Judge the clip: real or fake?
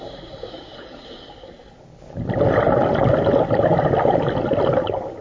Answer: real